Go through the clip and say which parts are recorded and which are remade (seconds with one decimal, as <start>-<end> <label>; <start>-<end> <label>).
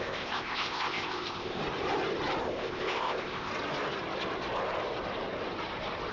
0.0-1.6 remade; 1.6-2.4 recorded; 2.4-3.5 remade; 3.5-6.1 recorded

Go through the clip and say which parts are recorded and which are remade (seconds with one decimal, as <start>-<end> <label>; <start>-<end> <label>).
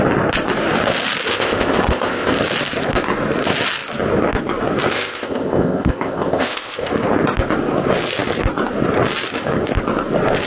0.0-1.3 recorded; 1.3-2.3 remade; 2.3-4.9 recorded; 4.9-6.9 remade; 6.9-10.5 recorded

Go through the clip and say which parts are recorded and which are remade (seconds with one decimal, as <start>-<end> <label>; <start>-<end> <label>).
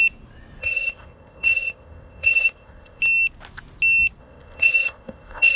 0.0-0.6 recorded; 0.6-3.0 remade; 3.0-4.2 recorded; 4.2-5.6 remade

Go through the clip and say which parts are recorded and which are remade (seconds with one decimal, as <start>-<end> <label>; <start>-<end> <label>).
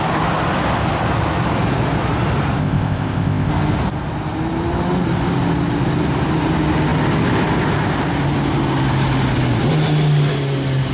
0.0-2.6 recorded; 2.6-3.5 remade; 3.5-10.9 recorded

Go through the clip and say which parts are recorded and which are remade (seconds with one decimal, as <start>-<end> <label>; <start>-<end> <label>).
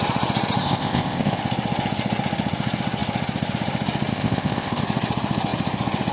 0.0-0.6 recorded; 0.6-1.4 remade; 1.4-4.1 recorded; 4.1-4.8 remade; 4.8-6.1 recorded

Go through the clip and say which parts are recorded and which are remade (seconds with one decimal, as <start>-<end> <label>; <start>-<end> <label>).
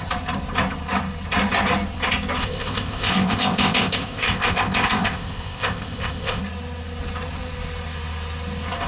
0.0-2.4 recorded; 2.4-6.4 remade; 6.4-8.9 recorded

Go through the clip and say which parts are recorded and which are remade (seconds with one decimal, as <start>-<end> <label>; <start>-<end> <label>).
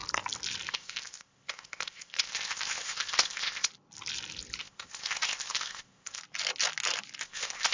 0.0-0.7 recorded; 0.7-3.7 remade; 3.7-4.6 recorded; 4.6-6.2 remade; 6.2-7.2 recorded; 7.2-7.7 remade